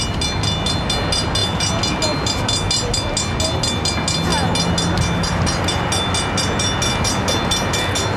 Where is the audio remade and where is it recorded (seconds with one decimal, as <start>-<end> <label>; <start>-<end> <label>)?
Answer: 0.0-8.2 recorded